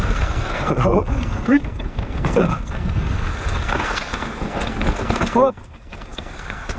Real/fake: fake